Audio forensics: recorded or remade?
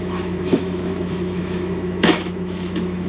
remade